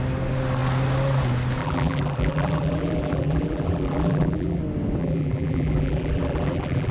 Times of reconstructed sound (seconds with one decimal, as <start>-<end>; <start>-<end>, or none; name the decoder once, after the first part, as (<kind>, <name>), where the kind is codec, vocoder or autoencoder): 1.6-4.6 (vocoder, BigVGAN v2); 5.0-6.9